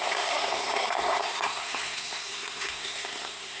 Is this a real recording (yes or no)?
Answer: no